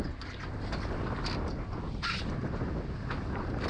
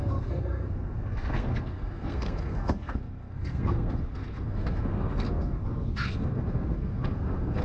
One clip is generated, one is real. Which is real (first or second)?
first